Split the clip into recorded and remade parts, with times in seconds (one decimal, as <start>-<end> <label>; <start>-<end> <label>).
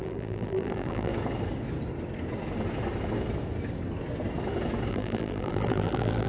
0.0-1.1 remade; 1.1-4.9 recorded; 4.9-6.3 remade